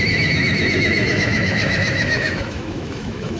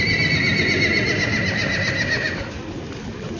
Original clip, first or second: second